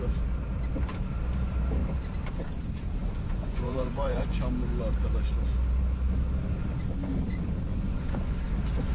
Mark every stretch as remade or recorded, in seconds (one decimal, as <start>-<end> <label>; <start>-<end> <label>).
0.0-3.0 recorded; 3.0-4.4 remade; 4.4-7.7 recorded; 7.7-8.4 remade; 8.4-8.9 recorded